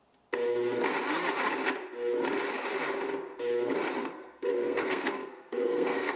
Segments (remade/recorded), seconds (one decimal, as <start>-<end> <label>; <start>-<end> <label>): 0.0-4.0 recorded; 4.0-6.2 remade